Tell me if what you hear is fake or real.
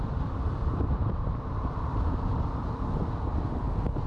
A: real